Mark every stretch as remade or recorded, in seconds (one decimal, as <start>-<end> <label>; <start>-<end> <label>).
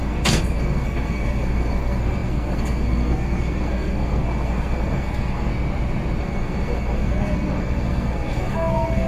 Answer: 0.0-5.5 remade; 5.5-6.2 recorded; 6.2-9.1 remade